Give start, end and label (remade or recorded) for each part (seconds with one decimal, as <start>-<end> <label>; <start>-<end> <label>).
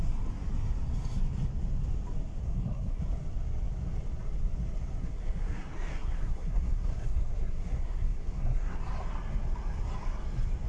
0.0-2.4 recorded; 2.4-3.0 remade; 3.0-5.0 recorded; 5.0-8.8 remade; 8.8-10.7 recorded